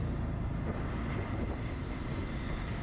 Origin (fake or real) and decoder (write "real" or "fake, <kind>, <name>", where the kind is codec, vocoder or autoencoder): real